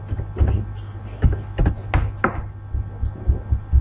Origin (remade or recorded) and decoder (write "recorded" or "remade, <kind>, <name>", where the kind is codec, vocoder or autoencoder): recorded